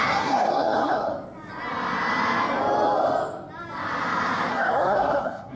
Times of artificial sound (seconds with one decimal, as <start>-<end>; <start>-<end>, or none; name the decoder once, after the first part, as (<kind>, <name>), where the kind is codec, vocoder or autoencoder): 0.0-1.1 (codec, SNAC); 4.5-5.6